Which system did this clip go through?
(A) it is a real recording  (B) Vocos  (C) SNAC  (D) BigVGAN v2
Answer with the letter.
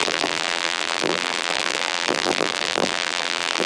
D